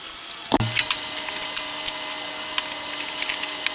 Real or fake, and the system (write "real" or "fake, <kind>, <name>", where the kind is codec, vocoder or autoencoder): real